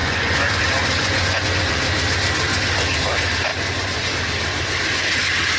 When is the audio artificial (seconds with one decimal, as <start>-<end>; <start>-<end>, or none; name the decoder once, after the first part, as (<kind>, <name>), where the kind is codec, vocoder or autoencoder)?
0.0-0.6 (vocoder, Vocos); 1.0-1.8; 3.5-4.1